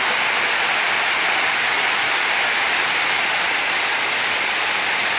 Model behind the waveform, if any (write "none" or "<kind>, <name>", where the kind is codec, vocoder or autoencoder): none